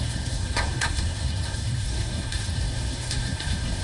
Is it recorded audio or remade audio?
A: remade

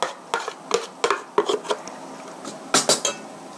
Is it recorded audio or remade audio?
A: recorded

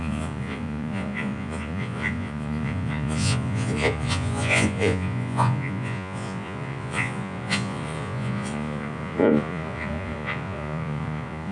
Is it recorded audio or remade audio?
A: remade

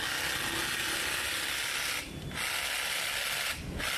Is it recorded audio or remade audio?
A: recorded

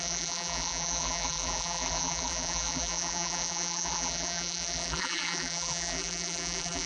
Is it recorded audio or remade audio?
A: remade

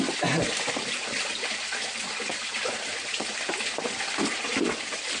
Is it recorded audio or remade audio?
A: recorded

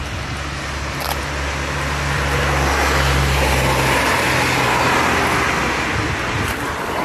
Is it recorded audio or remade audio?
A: recorded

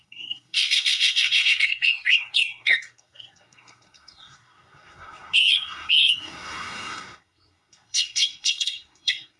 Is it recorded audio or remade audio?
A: remade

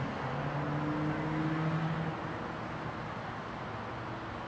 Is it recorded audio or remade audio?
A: recorded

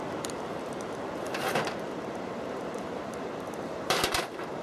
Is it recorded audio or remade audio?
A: remade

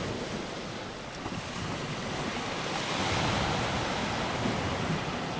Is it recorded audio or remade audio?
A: recorded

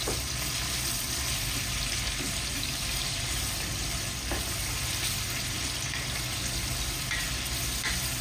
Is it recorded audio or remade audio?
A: recorded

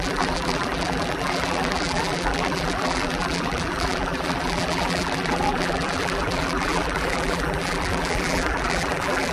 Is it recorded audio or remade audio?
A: remade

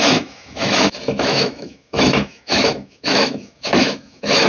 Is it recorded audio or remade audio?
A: remade